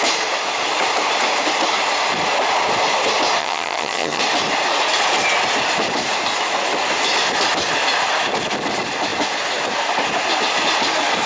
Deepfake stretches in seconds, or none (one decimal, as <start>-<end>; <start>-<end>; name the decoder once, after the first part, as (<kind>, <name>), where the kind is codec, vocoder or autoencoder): 3.4-4.2 (vocoder, HiFi-GAN)